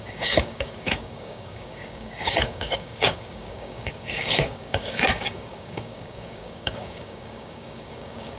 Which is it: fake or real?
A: fake